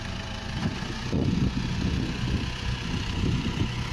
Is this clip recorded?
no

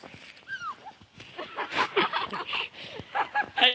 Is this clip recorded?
yes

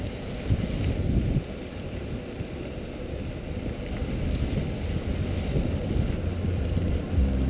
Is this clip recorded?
yes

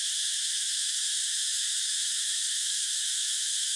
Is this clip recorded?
no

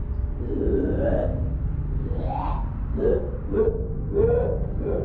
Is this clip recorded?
yes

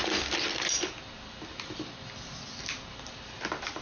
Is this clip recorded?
yes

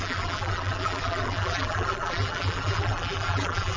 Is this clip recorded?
no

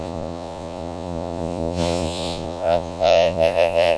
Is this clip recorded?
no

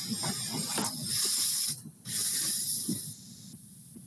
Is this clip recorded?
yes